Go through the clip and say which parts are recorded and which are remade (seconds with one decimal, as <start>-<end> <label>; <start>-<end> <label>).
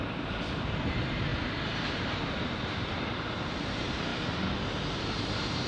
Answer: 0.0-4.1 remade; 4.1-4.9 recorded; 4.9-5.7 remade